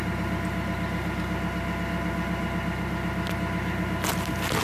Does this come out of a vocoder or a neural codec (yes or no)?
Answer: no